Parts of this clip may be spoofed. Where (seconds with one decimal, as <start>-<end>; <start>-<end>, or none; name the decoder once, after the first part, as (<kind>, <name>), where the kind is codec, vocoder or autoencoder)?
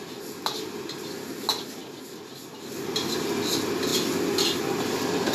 none